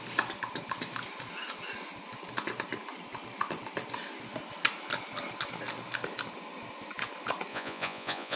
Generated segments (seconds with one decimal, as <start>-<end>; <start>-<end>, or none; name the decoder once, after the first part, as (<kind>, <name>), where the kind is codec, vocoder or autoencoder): 7.5-8.4 (vocoder, Vocos)